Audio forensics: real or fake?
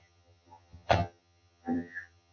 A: fake